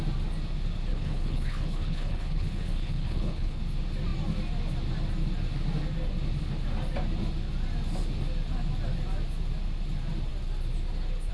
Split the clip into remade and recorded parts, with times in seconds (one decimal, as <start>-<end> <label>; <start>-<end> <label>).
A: 0.0-0.9 recorded; 0.9-3.6 remade; 3.6-11.3 recorded